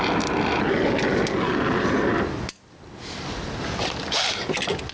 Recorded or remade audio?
recorded